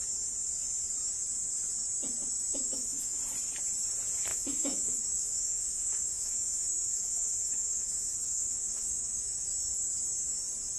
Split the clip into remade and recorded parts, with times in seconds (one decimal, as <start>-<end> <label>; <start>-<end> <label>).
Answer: 0.0-2.5 recorded; 2.5-3.2 remade; 3.2-4.3 recorded; 4.3-9.5 remade; 9.5-10.8 recorded